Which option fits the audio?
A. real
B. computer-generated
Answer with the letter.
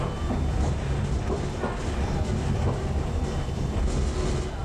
A